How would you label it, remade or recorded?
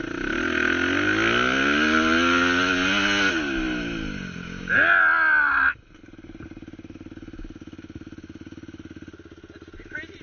recorded